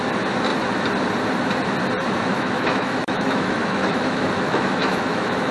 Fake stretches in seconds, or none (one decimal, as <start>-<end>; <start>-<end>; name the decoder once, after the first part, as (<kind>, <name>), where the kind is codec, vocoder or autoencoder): 2.2-5.5 (autoencoder, DAC-VAE)